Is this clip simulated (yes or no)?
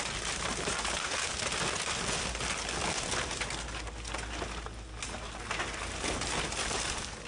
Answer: no